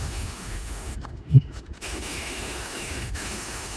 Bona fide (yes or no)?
no